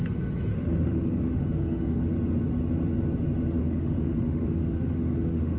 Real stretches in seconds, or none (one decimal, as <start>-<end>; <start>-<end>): 0.0-0.5; 2.0-3.6